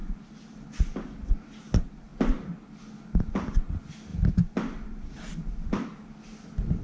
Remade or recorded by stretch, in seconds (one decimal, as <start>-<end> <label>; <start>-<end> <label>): 0.0-6.8 recorded

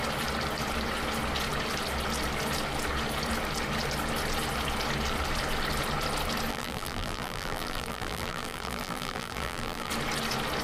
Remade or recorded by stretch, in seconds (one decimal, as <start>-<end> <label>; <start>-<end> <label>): 0.0-6.5 recorded; 6.5-9.9 remade; 9.9-10.6 recorded

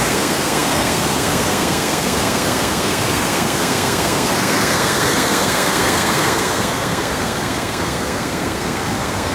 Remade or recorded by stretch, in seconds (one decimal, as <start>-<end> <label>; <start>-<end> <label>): 0.0-9.3 remade

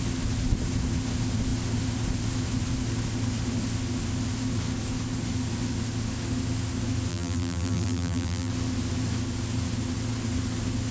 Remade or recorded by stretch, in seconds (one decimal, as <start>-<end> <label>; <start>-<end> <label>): 0.0-7.1 recorded; 7.1-8.5 remade; 8.5-10.9 recorded

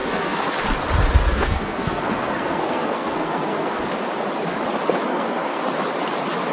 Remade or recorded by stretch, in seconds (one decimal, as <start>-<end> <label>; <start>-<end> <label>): 0.0-0.5 remade; 0.5-1.2 recorded; 1.2-3.8 remade; 3.8-5.1 recorded; 5.1-5.7 remade; 5.7-6.5 recorded